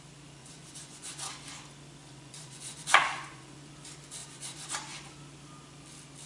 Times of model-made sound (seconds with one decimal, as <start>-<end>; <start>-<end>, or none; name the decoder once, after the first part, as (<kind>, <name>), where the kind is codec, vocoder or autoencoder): 0.4-1.3 (vocoder, Vocos); 2.0-3.7; 4.2-4.7